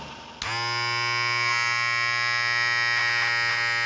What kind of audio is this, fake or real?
real